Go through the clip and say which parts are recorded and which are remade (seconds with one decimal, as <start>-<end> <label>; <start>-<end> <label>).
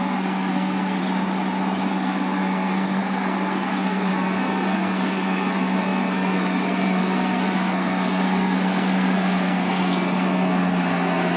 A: 0.0-1.0 remade; 1.0-1.9 recorded; 1.9-11.4 remade